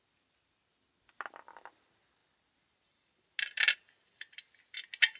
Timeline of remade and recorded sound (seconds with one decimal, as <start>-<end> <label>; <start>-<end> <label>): 0.0-5.2 recorded